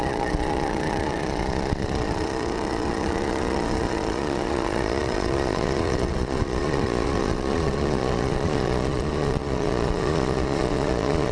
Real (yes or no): no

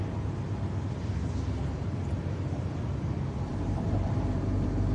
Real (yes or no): yes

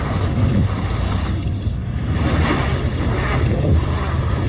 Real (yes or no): yes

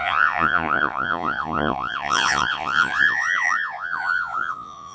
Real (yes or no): no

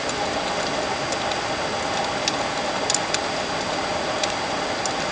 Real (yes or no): yes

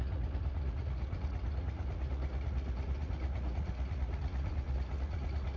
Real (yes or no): no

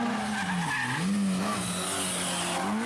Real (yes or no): yes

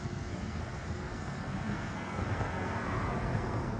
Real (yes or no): no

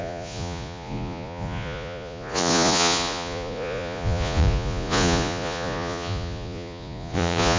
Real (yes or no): no